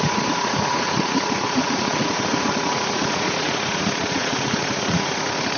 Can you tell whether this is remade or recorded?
remade